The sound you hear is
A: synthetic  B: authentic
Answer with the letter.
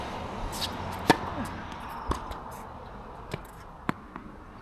B